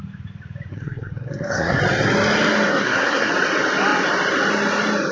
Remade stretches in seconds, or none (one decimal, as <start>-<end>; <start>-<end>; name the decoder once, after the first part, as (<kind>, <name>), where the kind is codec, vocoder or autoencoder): 0.7-1.8 (codec, SNAC); 2.7-3.3